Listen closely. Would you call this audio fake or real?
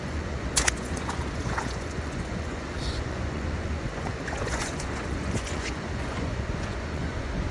fake